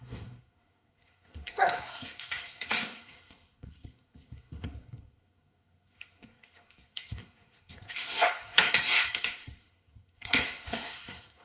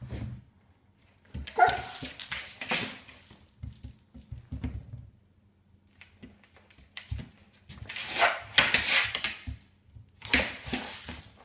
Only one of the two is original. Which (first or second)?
second